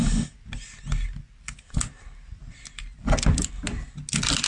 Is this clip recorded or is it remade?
recorded